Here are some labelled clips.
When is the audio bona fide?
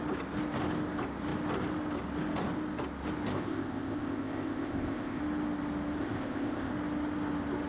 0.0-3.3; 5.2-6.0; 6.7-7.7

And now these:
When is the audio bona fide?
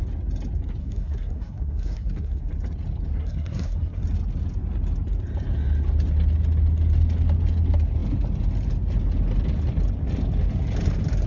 0.0-0.8; 2.5-3.1; 4.0-11.3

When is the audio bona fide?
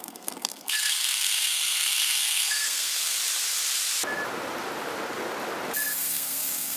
3.2-5.9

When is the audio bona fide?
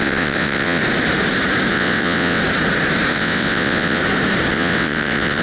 0.8-1.7; 2.4-3.1; 4.0-4.5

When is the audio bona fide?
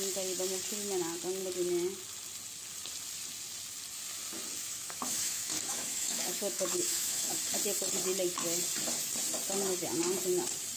0.0-4.6; 7.4-10.8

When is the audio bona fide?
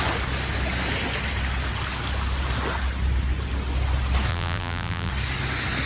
0.0-4.3; 5.1-5.9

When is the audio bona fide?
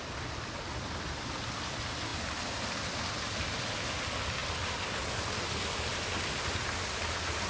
0.0-7.5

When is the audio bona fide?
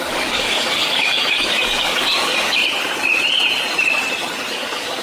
2.6-4.5